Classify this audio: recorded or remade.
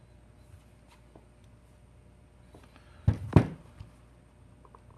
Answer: recorded